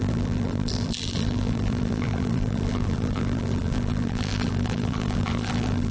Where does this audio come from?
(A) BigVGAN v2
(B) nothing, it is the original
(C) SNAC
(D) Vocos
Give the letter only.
A